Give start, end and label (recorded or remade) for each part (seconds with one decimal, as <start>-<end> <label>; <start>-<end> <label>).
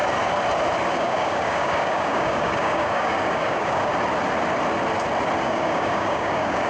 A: 0.0-0.9 recorded; 0.9-3.9 remade; 3.9-5.4 recorded; 5.4-6.7 remade